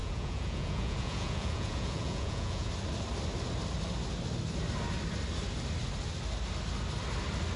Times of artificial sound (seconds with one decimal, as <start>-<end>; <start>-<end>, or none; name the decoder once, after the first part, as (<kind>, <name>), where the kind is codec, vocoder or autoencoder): 0.0-2.7 (vocoder, Vocos)